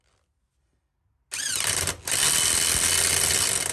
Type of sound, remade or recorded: recorded